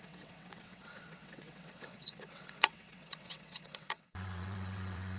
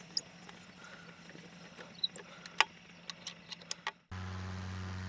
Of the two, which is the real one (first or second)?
second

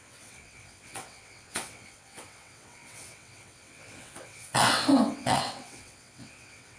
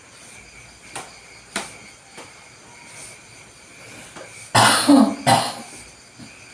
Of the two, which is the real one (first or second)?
second